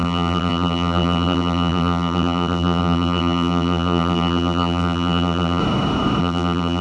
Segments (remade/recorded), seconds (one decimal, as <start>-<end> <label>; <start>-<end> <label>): 0.0-5.6 remade; 5.6-6.2 recorded; 6.2-6.8 remade